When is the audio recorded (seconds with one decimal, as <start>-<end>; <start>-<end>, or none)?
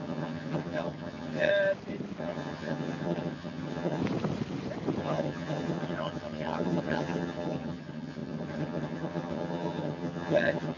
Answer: 1.5-2.2; 4.0-5.0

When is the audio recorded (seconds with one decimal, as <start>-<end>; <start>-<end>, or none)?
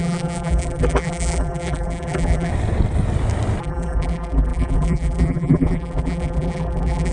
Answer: 2.5-3.6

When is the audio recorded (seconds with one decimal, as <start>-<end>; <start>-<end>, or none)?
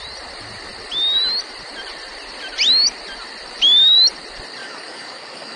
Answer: 0.0-4.6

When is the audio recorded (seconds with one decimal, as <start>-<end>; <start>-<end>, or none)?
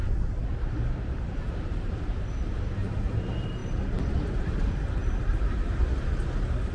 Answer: 0.0-6.7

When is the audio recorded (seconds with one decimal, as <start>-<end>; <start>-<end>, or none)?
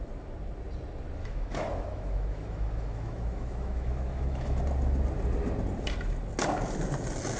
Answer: 0.0-1.2; 4.6-7.4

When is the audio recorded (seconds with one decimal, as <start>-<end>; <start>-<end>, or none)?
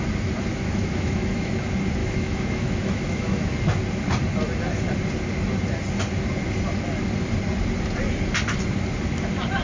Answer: 0.0-0.5; 1.6-2.0; 3.8-9.6